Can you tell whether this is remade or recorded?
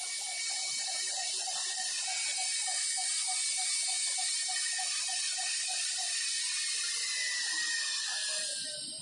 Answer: recorded